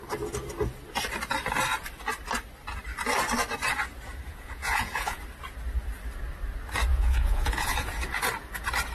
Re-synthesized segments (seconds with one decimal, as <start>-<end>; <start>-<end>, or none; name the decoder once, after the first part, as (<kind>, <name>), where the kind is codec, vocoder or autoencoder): 4.3-5.2 (vocoder, Vocos); 6.9-7.9